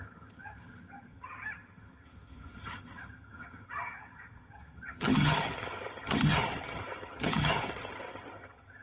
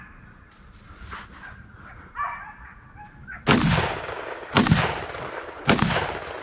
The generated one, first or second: first